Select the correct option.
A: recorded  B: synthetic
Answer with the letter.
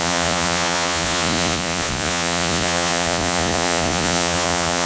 B